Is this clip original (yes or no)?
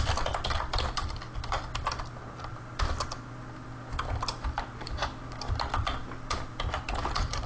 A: yes